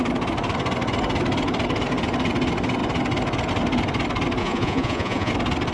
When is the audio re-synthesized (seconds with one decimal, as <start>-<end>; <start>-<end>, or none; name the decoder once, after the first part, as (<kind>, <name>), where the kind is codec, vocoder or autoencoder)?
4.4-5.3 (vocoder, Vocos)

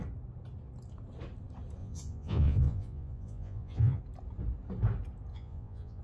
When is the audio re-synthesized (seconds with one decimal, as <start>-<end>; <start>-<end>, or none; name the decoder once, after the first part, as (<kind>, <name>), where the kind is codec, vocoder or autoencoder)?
1.8-4.0 (vocoder, Vocos); 5.3-6.0

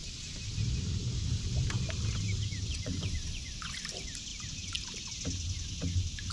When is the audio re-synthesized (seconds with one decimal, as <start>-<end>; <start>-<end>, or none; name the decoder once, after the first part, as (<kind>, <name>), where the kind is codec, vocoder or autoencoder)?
2.7-3.8 (vocoder, Vocos)

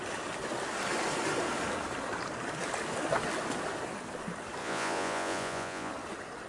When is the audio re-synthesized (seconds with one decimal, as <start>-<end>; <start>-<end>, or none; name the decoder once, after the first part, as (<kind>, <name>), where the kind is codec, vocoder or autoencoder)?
4.6-5.9 (vocoder, Vocos)

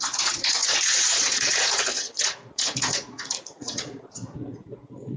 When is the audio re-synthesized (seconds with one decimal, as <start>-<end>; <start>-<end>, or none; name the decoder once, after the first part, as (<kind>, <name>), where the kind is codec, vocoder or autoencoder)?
0.0-5.2 (vocoder, Vocos)